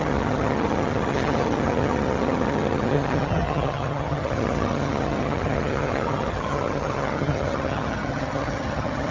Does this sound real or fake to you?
fake